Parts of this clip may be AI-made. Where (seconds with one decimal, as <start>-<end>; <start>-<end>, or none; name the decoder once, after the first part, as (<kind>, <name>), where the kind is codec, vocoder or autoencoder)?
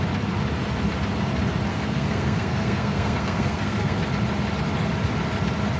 1.7-4.0 (codec, SNAC)